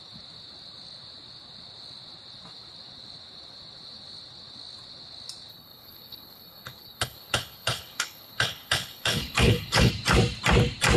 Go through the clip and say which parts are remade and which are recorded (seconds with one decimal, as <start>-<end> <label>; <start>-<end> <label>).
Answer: 0.0-5.5 recorded; 5.5-9.9 remade; 9.9-11.0 recorded